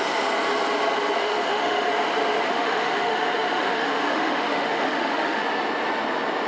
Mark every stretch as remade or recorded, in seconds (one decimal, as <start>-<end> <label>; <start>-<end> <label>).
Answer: 0.0-1.2 recorded; 1.2-1.9 remade; 1.9-2.5 recorded; 2.5-5.4 remade; 5.4-6.5 recorded